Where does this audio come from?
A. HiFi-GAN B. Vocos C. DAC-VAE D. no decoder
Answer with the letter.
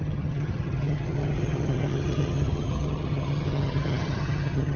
A